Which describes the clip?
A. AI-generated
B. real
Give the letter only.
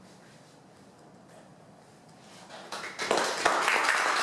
B